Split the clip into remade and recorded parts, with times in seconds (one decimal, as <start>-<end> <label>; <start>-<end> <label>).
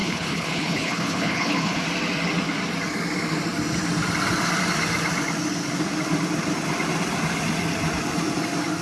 0.0-1.8 remade; 1.8-8.8 recorded